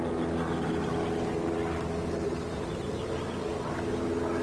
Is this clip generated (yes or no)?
no